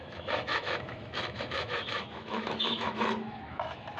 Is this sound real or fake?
fake